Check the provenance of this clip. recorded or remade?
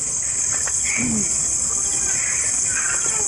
recorded